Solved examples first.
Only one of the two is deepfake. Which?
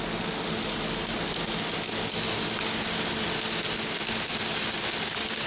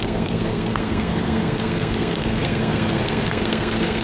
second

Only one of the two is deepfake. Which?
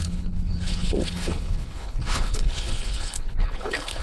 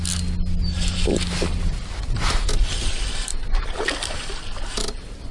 first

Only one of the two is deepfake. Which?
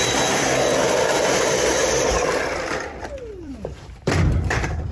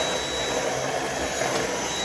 first